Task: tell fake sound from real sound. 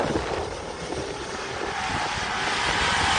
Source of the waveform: real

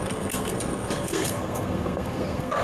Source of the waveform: fake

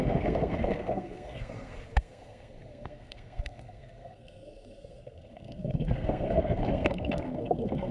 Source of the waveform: fake